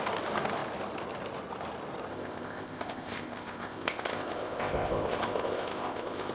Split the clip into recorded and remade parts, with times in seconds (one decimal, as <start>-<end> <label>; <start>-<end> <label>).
0.0-2.1 recorded; 2.1-6.3 remade